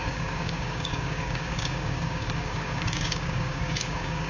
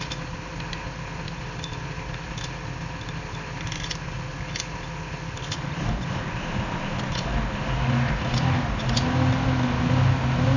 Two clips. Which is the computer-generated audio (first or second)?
first